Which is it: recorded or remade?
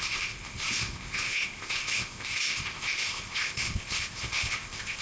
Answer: remade